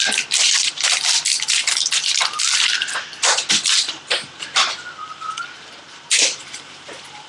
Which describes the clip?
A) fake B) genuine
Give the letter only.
A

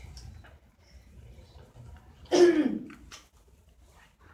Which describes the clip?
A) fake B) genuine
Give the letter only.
B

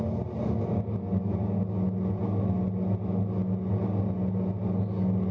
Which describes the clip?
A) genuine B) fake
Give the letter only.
A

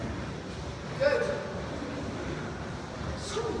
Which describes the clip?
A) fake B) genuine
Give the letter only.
B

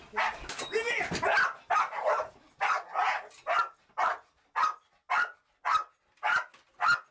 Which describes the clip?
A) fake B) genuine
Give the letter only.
B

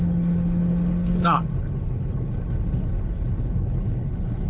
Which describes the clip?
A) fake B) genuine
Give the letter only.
A